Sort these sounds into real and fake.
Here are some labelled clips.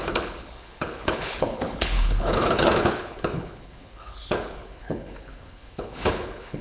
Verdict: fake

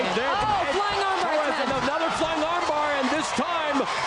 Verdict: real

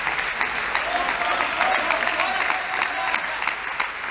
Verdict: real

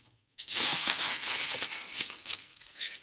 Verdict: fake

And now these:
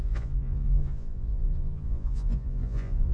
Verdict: fake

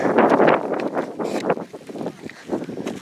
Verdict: real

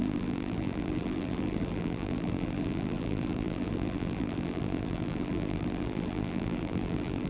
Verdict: fake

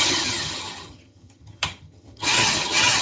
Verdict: fake